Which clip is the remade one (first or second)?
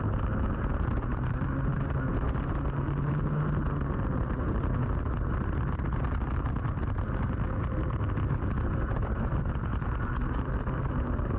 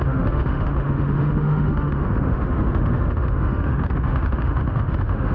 second